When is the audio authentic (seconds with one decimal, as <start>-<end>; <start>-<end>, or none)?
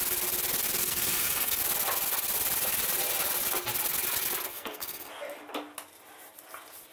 0.0-0.8; 1.6-4.5; 5.1-6.9